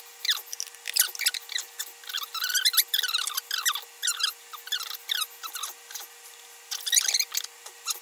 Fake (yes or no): no